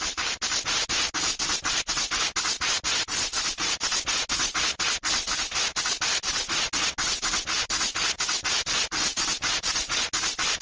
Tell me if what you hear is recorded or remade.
recorded